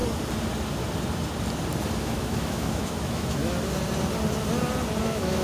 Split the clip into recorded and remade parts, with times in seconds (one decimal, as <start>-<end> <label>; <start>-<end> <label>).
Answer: 0.0-2.0 recorded; 2.0-3.4 remade; 3.4-5.0 recorded; 5.0-5.4 remade